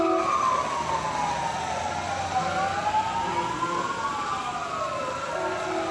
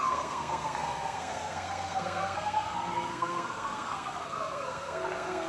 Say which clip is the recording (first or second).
first